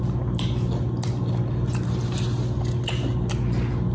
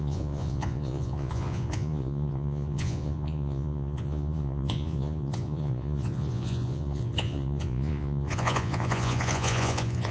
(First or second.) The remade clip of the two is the second